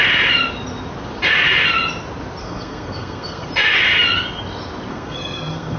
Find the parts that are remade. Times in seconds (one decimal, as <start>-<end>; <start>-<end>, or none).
2.4-3.5; 4.9-5.8